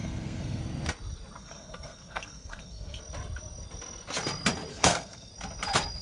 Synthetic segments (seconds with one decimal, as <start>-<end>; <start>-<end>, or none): 0.0-0.6; 1.4-3.0; 4.7-5.3